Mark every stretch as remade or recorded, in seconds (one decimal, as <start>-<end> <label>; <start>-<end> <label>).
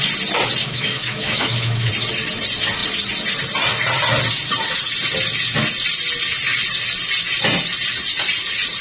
0.0-0.6 recorded; 0.6-1.9 remade; 1.9-8.8 recorded